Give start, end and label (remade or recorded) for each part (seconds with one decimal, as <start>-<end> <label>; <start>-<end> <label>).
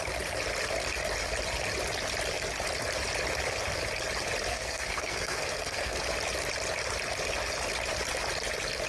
0.0-4.5 recorded; 4.5-6.0 remade; 6.0-8.9 recorded